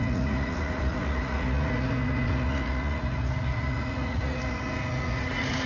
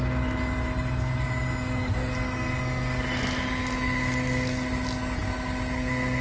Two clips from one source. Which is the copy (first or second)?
first